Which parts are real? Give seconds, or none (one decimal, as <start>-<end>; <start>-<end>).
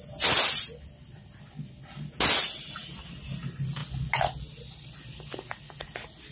0.0-6.3